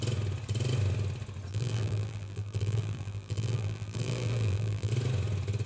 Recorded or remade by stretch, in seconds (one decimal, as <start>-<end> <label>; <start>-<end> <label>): 0.0-1.5 recorded; 1.5-4.9 remade; 4.9-5.7 recorded